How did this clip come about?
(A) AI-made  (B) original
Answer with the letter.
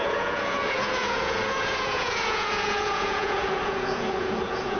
A